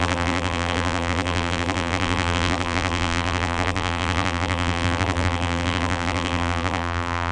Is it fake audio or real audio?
fake